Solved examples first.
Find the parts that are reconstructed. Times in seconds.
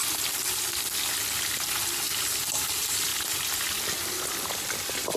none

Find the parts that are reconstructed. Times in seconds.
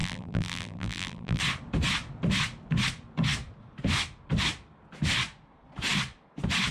0.0-1.4 (vocoder, BigVGAN v2)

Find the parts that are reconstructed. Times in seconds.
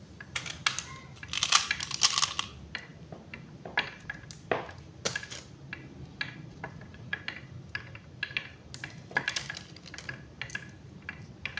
6.5-7.2 (vocoder, Vocos)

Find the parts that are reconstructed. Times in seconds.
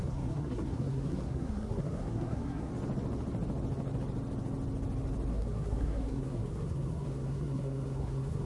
0.0-2.7 (codec, SNAC); 5.3-8.5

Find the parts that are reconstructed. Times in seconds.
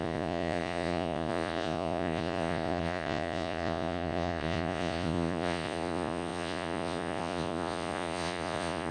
0.0-8.9 (vocoder, Vocos)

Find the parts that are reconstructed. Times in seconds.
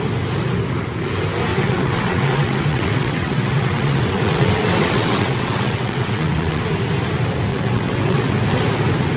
1.5-6.6 (vocoder, WaveNeXt); 7.5-8.4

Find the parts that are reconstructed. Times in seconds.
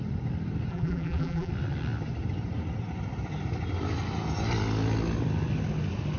0.7-1.5 (vocoder, BigVGAN v2)